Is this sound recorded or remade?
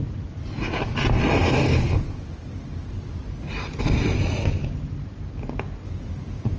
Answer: recorded